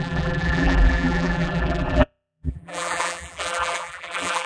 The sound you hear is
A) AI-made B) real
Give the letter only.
A